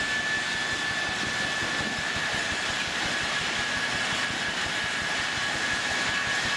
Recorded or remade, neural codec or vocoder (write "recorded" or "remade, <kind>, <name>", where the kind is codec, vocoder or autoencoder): recorded